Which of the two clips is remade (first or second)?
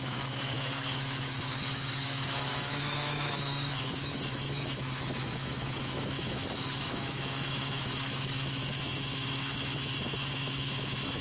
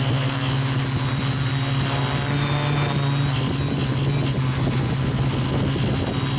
first